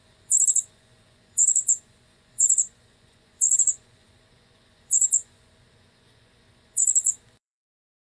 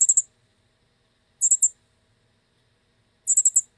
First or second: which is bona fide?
second